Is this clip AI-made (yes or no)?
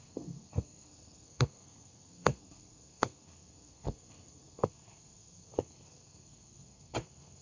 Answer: yes